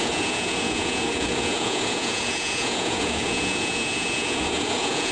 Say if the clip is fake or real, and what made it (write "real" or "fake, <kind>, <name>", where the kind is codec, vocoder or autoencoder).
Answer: fake, vocoder, Vocos